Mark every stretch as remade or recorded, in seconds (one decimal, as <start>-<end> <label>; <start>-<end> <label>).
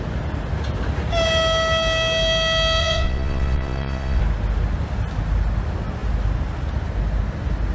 0.0-2.8 recorded; 2.8-4.2 remade; 4.2-7.7 recorded